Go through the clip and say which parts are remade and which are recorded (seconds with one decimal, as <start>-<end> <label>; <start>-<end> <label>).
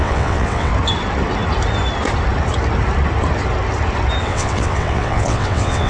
0.0-0.7 remade; 0.7-4.2 recorded; 4.2-5.9 remade